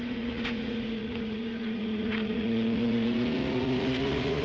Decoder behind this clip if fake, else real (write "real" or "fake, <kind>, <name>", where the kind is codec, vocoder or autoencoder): fake, vocoder, Vocos